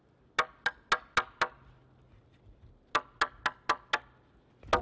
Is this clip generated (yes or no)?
no